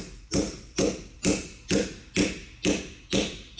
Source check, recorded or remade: recorded